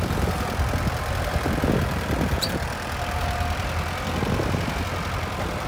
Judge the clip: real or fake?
real